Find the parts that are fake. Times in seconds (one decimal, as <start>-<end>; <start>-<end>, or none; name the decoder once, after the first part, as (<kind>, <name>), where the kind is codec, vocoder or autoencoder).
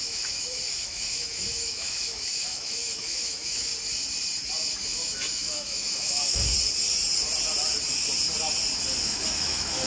0.0-3.7 (autoencoder, DAC-VAE); 4.7-6.5; 9.0-9.9